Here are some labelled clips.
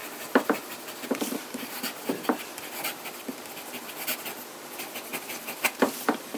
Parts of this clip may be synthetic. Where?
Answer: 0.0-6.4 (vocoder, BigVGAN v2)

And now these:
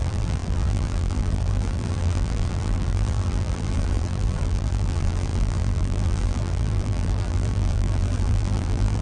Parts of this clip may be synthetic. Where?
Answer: 0.0-9.0 (vocoder, BigVGAN v2)

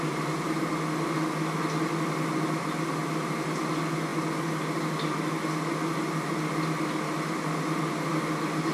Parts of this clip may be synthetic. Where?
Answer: none

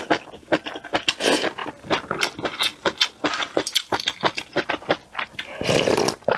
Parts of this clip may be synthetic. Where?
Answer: 1.6-2.2 (vocoder, BigVGAN v2)

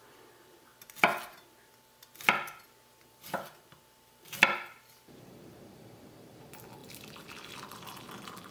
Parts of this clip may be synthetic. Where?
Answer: 0.0-0.7 (vocoder, BigVGAN v2); 3.1-8.5